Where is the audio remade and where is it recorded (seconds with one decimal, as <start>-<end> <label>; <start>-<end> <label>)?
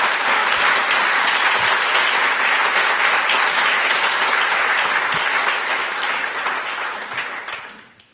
0.0-8.1 recorded